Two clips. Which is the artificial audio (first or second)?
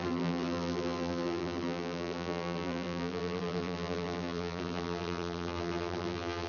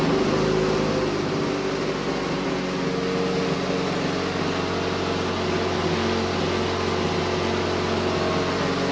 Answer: first